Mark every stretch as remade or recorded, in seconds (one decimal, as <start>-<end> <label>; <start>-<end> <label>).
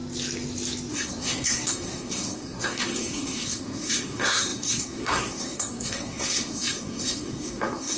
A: 0.0-0.9 recorded; 0.9-8.0 remade